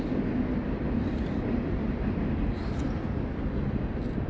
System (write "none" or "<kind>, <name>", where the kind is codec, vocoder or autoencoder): none